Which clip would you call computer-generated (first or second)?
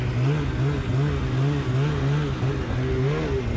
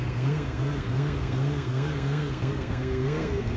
second